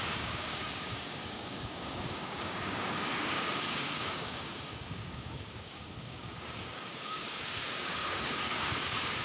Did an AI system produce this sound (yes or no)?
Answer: yes